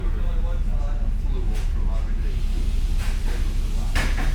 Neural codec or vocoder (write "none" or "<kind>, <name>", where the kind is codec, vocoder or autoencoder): none